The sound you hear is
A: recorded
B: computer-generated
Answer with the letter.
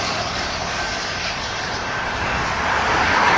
B